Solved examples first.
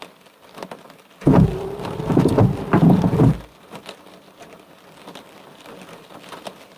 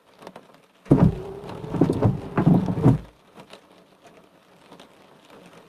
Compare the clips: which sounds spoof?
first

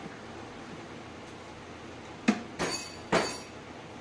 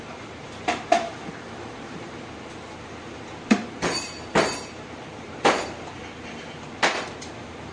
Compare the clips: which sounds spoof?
second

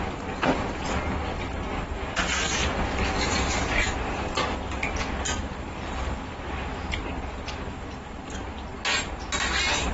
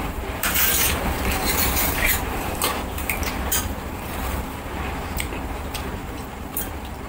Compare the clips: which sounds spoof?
second